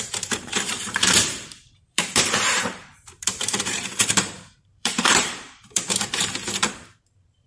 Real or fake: fake